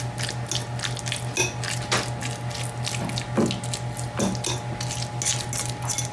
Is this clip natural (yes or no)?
yes